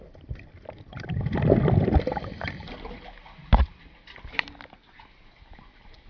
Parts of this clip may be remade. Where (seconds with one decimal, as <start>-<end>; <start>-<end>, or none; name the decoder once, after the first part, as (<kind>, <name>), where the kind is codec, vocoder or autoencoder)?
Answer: none